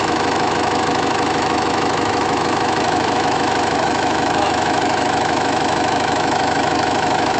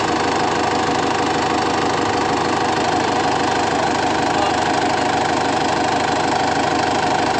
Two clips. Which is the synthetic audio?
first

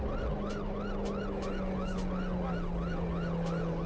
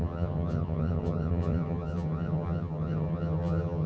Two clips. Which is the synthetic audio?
second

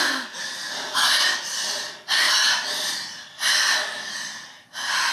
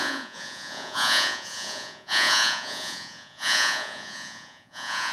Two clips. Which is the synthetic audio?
second